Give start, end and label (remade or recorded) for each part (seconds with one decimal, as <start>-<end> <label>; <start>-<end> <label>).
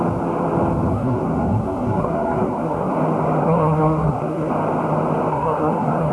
0.0-0.9 recorded; 0.9-2.9 remade; 2.9-3.4 recorded; 3.4-4.5 remade; 4.5-5.3 recorded; 5.3-6.1 remade